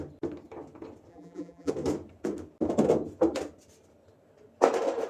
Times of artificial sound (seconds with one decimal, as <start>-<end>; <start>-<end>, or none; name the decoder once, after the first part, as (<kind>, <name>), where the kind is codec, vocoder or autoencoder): 1.1-1.7 (vocoder, BigVGAN v2)